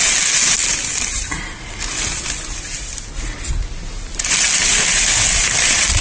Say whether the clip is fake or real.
real